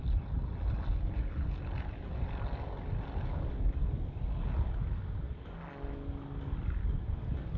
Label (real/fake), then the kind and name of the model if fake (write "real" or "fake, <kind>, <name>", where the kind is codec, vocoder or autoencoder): real